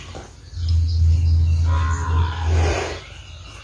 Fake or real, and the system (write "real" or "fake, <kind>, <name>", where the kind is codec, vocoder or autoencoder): real